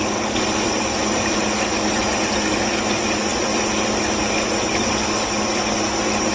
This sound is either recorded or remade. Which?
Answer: recorded